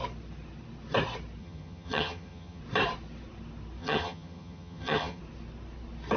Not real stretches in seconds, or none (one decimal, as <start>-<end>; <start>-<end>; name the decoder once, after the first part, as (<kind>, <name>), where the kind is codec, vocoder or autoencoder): 1.4-2.6 (vocoder, HiFi-GAN); 3.8-5.2